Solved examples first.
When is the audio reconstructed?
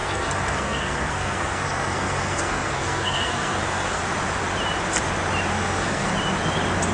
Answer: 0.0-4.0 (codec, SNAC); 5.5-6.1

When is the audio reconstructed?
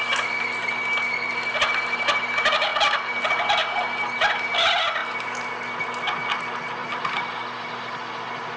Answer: 6.8-8.2 (vocoder, BigVGAN v2)